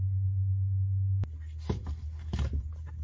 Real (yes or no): yes